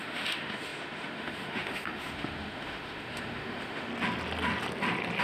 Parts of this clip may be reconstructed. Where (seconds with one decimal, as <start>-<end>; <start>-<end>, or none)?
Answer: 0.0-3.9

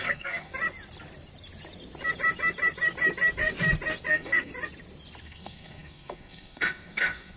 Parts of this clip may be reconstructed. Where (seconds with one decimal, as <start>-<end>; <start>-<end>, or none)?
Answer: 0.0-0.5; 4.1-4.5; 5.2-7.4

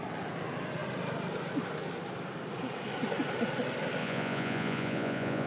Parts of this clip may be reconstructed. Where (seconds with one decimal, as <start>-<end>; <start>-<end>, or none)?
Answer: 4.0-5.5